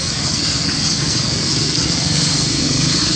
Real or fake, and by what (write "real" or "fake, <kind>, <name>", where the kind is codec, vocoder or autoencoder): fake, codec, SNAC